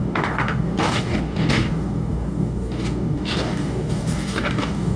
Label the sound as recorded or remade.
remade